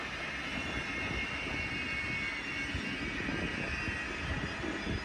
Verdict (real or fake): real